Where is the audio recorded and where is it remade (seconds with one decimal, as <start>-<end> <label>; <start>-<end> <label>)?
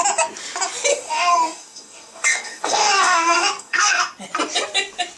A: 0.0-0.9 recorded; 0.9-4.0 remade; 4.0-5.2 recorded